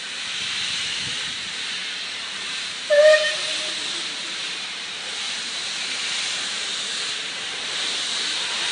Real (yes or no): no